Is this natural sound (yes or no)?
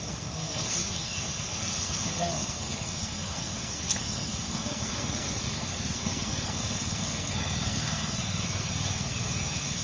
no